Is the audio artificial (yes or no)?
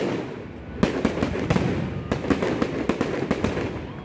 no